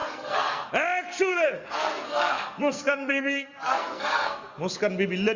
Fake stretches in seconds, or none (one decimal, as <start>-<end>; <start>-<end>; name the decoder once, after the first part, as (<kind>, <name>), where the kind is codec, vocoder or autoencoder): 0.0-0.7 (codec, SNAC); 1.3-4.5